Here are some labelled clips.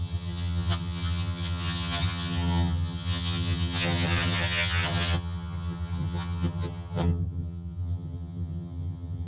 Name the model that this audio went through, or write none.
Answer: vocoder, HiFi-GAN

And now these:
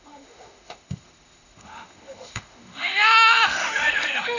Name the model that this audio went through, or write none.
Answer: autoencoder, DAC-VAE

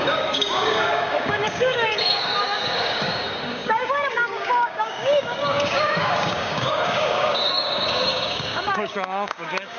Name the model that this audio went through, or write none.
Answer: codec, DAC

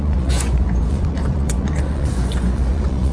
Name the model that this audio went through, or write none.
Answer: vocoder, Vocos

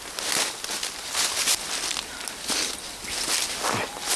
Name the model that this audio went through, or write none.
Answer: none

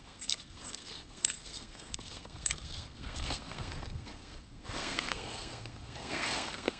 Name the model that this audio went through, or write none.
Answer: codec, SNAC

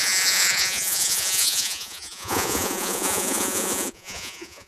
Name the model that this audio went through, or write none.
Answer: vocoder, Vocos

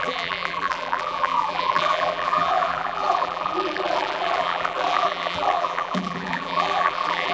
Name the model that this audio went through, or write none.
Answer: vocoder, BigVGAN v2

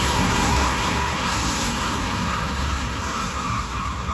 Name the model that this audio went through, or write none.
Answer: codec, SNAC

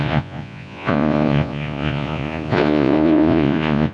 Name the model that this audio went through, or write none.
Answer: vocoder, Vocos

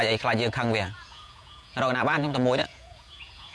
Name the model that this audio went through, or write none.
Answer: vocoder, Vocos